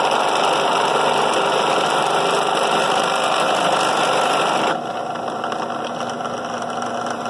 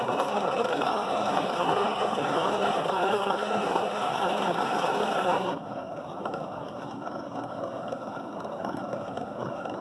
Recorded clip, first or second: first